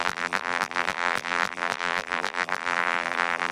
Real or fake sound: fake